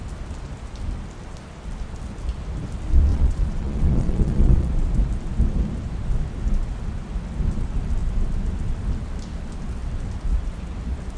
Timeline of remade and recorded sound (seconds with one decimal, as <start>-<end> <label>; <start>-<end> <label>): 0.0-3.1 recorded; 3.1-4.7 remade; 4.7-11.2 recorded